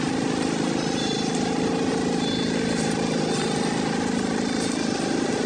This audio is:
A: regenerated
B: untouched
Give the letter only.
B